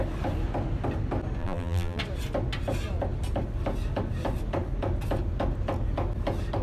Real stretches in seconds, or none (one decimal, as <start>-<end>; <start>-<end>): 0.0-1.4; 2.0-6.6